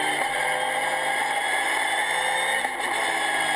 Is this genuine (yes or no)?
yes